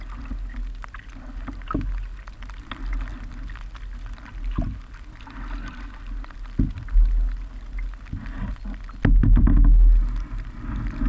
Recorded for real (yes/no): yes